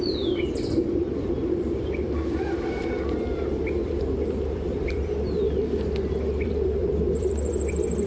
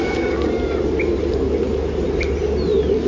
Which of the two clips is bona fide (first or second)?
second